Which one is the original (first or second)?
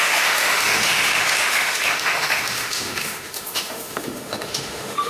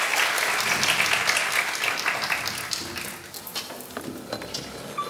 second